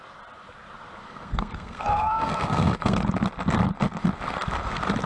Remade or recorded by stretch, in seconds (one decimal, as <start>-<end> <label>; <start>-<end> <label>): 0.0-1.0 recorded; 1.0-3.0 remade; 3.0-5.1 recorded